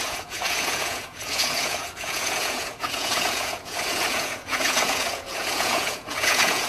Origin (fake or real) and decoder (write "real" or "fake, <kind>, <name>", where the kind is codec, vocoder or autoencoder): fake, vocoder, Vocos